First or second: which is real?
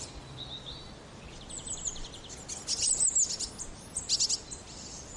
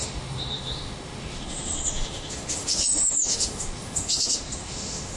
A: first